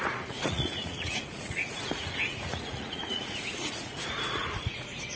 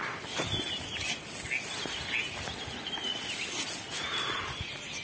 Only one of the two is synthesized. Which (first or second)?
first